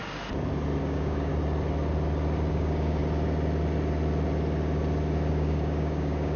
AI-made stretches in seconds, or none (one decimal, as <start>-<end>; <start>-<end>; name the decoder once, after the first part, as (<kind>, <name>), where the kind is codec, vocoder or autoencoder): 0.8-1.3 (codec, DAC); 2.5-3.0; 5.3-6.4